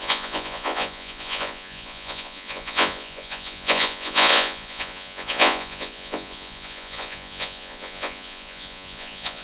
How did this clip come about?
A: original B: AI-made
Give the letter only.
B